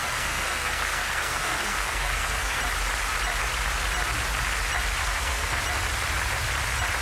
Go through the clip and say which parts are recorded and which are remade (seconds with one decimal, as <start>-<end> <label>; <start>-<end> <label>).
0.0-2.6 remade; 2.6-5.0 recorded; 5.0-5.6 remade; 5.6-7.0 recorded